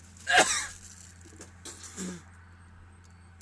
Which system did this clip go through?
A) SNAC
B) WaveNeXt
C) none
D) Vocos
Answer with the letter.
C